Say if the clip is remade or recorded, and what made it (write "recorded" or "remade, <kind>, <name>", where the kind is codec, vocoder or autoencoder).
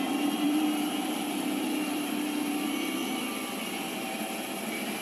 remade, vocoder, BigVGAN v2